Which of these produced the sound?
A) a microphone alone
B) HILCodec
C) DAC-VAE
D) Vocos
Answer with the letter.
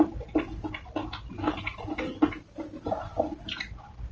A